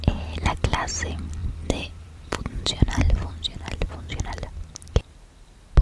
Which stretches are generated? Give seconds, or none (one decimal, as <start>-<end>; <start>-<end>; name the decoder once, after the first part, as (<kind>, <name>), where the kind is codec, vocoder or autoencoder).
1.4-4.2 (vocoder, BigVGAN v2)